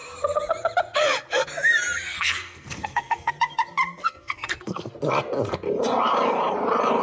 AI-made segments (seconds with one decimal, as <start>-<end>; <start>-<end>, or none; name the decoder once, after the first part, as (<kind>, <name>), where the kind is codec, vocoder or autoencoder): 2.1-3.3 (codec, SNAC); 4.0-4.9